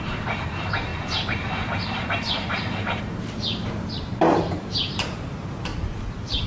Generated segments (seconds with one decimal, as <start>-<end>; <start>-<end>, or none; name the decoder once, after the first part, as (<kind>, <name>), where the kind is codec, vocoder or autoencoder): 0.0-5.7 (vocoder, BigVGAN v2)